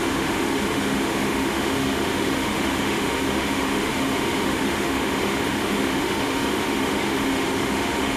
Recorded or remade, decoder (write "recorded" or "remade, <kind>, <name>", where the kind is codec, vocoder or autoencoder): remade, autoencoder, DAC-VAE